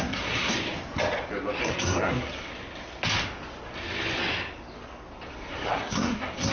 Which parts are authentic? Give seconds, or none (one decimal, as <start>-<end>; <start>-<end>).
0.5-1.6; 2.5-5.3